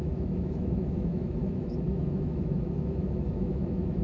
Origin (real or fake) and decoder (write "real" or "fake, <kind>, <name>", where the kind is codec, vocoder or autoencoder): fake, autoencoder, DAC-VAE